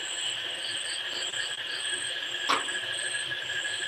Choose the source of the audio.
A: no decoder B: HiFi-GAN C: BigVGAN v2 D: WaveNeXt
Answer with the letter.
A